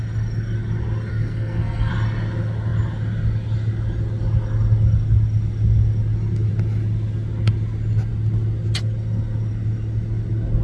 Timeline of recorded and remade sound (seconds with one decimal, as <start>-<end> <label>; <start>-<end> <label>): 0.0-1.1 recorded; 1.1-1.9 remade; 1.9-10.6 recorded